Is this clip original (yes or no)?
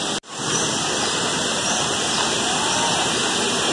yes